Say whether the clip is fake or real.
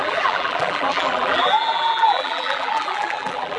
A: fake